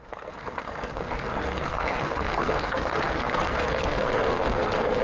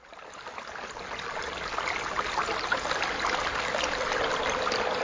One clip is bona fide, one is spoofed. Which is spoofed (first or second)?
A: first